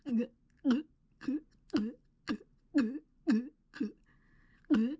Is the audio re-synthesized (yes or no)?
no